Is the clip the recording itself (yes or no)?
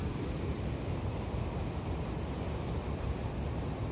yes